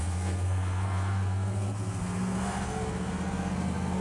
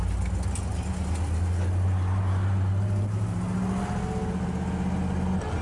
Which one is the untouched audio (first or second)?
second